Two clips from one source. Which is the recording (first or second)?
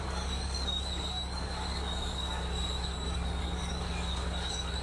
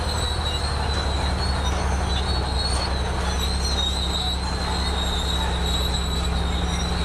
second